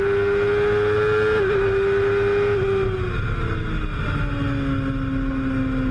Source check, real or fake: real